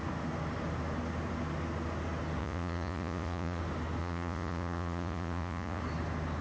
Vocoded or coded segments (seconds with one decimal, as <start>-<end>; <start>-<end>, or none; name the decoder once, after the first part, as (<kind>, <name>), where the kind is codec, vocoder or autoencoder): 2.4-3.6 (vocoder, Vocos); 4.0-5.8